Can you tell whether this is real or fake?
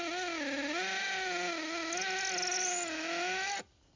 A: real